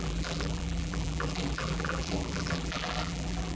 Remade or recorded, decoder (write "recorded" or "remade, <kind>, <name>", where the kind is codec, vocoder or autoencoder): remade, vocoder, BigVGAN v2